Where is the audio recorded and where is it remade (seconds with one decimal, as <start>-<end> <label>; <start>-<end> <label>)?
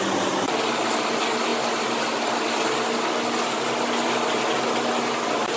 0.0-5.6 recorded